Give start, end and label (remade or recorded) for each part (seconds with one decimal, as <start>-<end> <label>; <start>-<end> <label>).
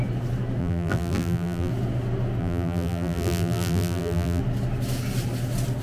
0.0-0.6 recorded; 0.6-1.7 remade; 1.7-2.4 recorded; 2.4-4.4 remade; 4.4-5.8 recorded